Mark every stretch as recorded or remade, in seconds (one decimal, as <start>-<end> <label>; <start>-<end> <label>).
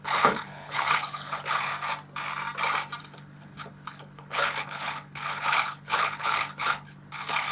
0.0-1.7 remade; 1.7-3.0 recorded; 3.0-7.5 remade